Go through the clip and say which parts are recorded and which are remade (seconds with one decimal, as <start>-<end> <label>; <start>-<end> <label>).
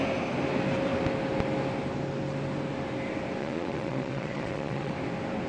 0.0-3.4 recorded; 3.4-4.9 remade; 4.9-5.5 recorded